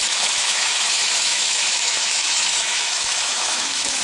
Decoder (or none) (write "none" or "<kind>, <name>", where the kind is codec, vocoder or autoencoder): autoencoder, DAC-VAE